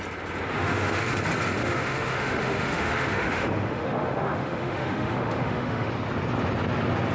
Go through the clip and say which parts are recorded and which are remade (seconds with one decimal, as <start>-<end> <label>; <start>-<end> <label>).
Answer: 0.0-0.5 recorded; 0.5-1.2 remade; 1.2-1.6 recorded; 1.6-5.9 remade; 5.9-7.1 recorded